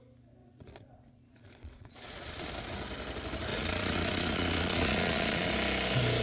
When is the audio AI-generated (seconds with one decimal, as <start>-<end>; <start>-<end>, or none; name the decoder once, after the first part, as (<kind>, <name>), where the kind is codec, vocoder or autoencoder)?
0.4-2.5 (vocoder, Vocos); 3.5-5.5